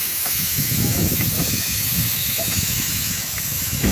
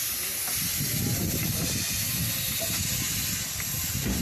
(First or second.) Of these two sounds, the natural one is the second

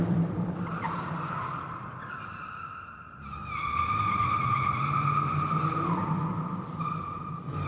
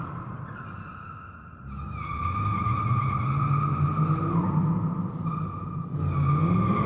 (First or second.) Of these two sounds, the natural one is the second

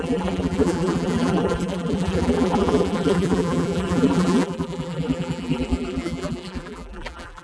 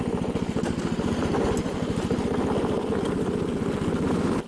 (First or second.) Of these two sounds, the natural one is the second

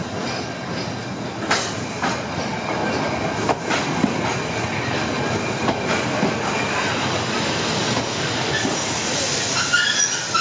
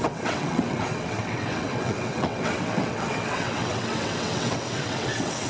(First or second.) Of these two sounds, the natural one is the first